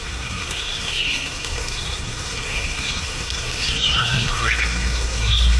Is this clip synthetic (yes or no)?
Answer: yes